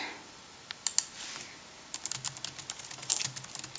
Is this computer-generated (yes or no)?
no